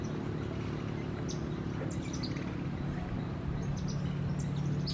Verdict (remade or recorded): recorded